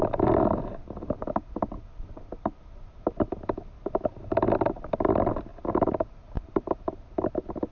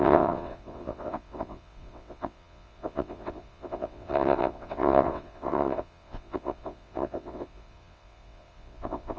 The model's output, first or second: second